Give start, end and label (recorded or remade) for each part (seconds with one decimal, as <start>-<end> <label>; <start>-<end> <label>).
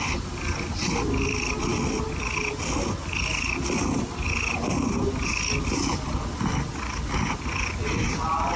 0.0-8.6 recorded